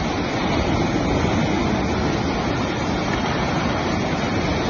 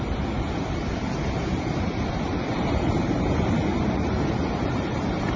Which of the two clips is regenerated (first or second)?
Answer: second